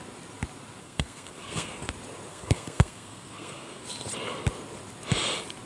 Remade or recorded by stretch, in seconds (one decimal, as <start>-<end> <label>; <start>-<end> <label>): 0.0-0.8 recorded; 0.8-1.7 remade; 1.7-2.3 recorded; 2.3-3.8 remade; 3.8-5.7 recorded